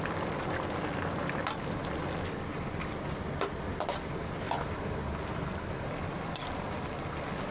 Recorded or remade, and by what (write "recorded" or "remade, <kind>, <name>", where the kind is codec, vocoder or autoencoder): recorded